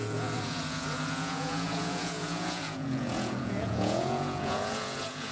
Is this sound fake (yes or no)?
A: yes